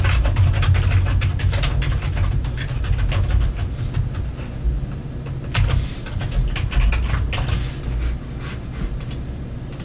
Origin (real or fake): real